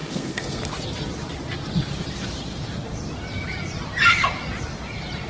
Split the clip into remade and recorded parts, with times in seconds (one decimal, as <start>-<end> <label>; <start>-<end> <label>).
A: 0.0-0.6 remade; 0.6-5.3 recorded